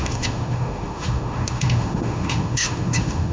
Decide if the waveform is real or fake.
fake